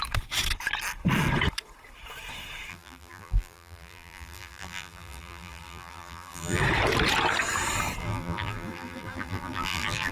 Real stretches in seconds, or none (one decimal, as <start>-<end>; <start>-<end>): 0.0-2.7; 6.6-8.0